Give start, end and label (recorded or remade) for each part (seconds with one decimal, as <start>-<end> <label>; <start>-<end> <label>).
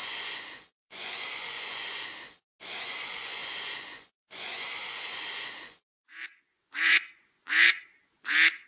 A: 0.0-2.1 remade; 2.1-2.8 recorded; 2.8-8.7 remade